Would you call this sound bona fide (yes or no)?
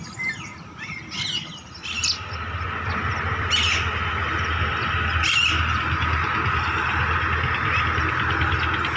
yes